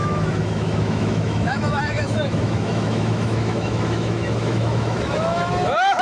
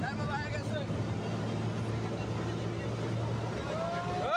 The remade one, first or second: first